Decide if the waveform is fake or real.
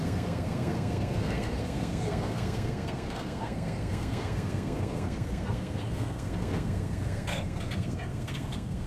fake